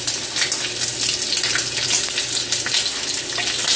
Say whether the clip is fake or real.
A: real